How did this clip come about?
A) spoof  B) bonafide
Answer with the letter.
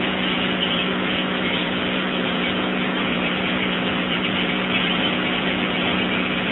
A